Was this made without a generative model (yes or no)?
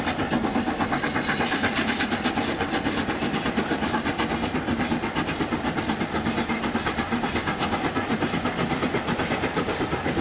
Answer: yes